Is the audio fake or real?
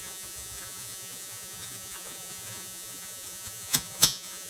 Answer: fake